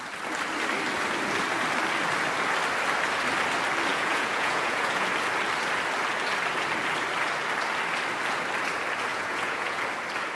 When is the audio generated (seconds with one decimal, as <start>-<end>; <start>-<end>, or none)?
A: 3.9-5.1; 9.1-9.8